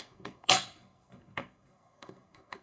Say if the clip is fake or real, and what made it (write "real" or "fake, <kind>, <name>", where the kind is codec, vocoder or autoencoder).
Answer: fake, codec, SNAC